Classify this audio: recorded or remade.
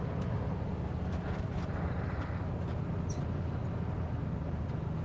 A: recorded